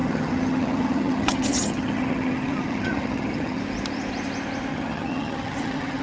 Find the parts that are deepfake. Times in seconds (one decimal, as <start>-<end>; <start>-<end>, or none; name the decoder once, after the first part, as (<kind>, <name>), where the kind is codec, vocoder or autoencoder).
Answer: 0.0-3.6 (vocoder, HiFi-GAN); 4.7-6.0